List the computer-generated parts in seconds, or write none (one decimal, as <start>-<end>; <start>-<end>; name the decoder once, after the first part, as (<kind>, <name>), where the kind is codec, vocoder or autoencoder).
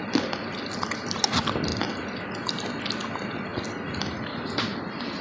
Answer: none